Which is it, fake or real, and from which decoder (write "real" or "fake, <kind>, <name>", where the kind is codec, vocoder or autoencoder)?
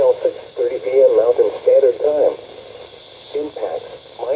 real